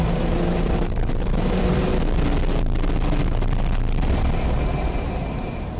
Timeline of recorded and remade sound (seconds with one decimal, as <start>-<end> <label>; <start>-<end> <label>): 0.0-1.9 remade; 1.9-5.3 recorded; 5.3-5.8 remade

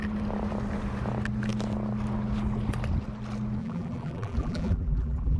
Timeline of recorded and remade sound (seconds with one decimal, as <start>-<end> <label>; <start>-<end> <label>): 0.0-3.6 recorded; 3.6-5.4 remade

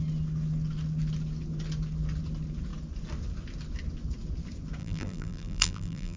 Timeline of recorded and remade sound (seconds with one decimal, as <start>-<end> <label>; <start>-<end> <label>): 0.0-4.8 recorded; 4.8-6.2 remade

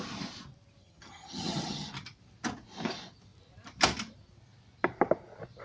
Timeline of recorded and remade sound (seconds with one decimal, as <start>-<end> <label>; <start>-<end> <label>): 0.0-0.8 recorded; 0.8-1.9 remade; 1.9-5.6 recorded